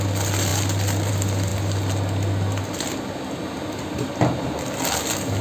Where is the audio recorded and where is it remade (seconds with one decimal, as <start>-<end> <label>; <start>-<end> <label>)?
0.0-0.5 recorded; 0.5-1.1 remade; 1.1-5.4 recorded